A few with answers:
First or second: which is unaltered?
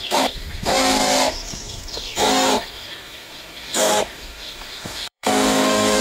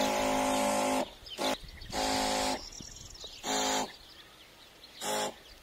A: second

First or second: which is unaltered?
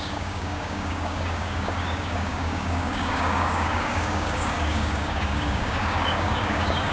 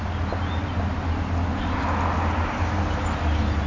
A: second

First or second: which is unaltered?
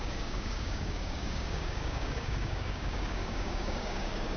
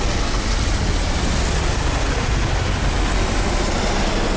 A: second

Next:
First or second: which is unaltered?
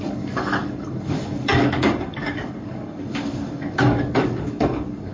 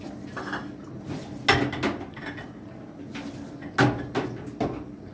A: second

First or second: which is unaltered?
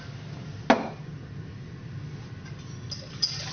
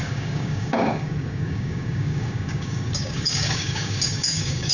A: first